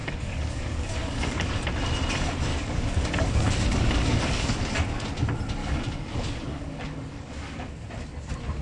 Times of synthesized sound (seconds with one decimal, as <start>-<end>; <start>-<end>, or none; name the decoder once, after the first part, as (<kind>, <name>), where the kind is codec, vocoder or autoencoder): 0.0-1.5 (codec, DAC); 2.5-4.6; 5.6-7.7